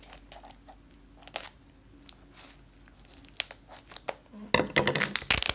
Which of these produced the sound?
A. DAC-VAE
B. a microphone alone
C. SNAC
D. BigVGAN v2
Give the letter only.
B